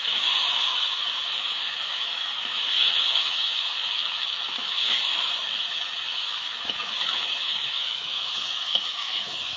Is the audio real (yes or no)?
no